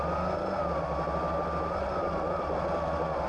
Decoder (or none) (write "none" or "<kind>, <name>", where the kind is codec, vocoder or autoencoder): none